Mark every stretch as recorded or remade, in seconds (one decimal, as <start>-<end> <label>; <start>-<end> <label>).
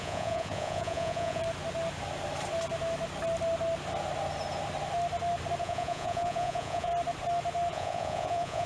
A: 0.0-1.4 remade; 1.4-5.6 recorded; 5.6-6.9 remade; 6.9-7.7 recorded; 7.7-8.7 remade